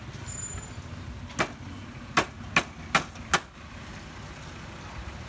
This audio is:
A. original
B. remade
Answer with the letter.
A